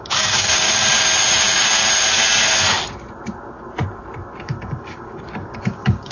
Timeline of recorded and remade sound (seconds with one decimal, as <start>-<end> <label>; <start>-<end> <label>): 0.0-0.8 remade; 0.8-4.4 recorded; 4.4-6.1 remade